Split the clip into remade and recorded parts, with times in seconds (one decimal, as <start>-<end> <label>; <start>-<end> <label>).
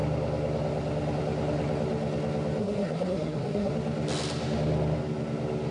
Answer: 0.0-2.6 recorded; 2.6-3.7 remade; 3.7-5.7 recorded